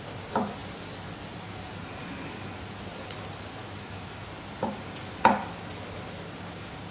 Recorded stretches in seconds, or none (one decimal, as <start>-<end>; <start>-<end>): 0.0-3.6; 4.2-6.9